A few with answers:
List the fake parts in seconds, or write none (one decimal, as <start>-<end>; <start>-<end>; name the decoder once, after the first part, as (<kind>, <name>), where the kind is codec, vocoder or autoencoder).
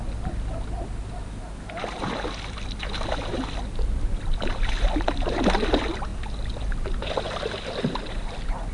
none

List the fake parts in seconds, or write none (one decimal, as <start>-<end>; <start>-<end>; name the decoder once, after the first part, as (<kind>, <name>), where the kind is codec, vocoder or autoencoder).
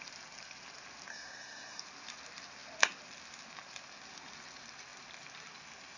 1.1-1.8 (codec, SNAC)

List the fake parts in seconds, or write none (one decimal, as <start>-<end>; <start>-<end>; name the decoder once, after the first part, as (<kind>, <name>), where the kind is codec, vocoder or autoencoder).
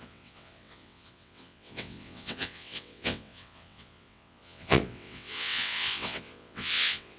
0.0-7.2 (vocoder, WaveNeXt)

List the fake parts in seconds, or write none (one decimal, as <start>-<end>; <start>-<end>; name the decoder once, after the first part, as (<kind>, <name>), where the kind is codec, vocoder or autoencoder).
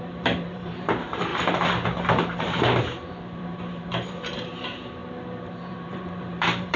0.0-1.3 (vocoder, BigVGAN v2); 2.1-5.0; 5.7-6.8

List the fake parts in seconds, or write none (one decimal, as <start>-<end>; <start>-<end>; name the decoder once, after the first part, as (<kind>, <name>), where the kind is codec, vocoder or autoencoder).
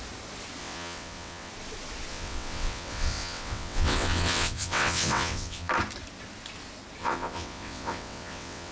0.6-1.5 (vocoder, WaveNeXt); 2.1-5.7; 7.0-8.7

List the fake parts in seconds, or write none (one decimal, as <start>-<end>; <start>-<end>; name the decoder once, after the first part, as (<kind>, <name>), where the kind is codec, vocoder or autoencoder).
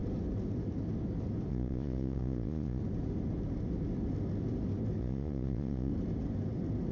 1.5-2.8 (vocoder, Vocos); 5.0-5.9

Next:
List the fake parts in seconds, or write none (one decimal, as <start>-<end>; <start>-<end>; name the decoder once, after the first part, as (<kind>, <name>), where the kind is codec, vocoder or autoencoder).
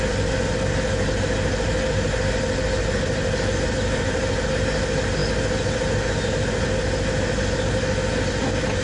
none